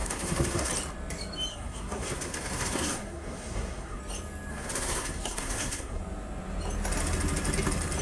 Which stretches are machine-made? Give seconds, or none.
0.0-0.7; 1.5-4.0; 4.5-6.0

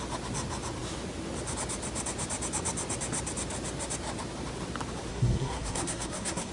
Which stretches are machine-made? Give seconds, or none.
5.1-6.5

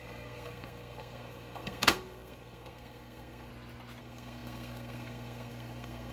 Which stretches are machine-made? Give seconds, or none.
0.0-3.5; 4.0-6.1

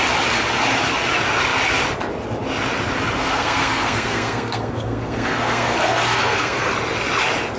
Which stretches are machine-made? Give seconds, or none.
3.2-6.7

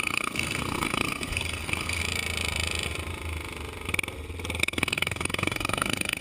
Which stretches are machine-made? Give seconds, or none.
0.0-2.0; 4.6-6.2

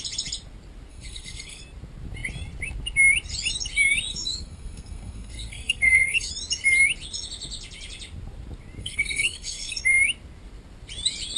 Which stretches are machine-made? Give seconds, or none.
0.9-1.6; 4.1-6.3; 8.8-9.8